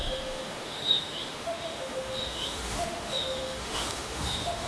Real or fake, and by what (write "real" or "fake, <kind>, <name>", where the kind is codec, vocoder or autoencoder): fake, autoencoder, DAC-VAE